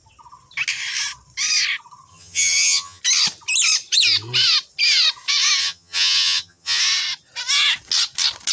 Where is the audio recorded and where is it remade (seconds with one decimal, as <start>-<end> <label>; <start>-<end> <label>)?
0.0-2.1 recorded; 2.1-3.0 remade; 3.0-5.6 recorded; 5.6-6.8 remade; 6.8-8.5 recorded